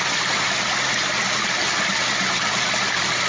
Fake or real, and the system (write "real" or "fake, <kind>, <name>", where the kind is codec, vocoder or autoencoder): real